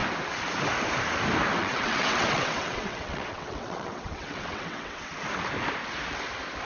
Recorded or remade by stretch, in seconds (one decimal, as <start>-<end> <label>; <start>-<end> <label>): 0.0-1.6 recorded; 1.6-5.1 remade; 5.1-6.6 recorded